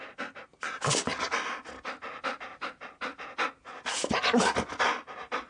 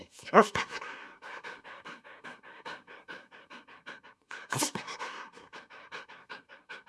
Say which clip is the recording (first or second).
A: first